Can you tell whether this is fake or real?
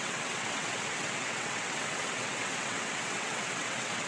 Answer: fake